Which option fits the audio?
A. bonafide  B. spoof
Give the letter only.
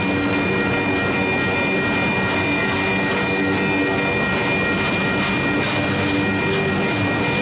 A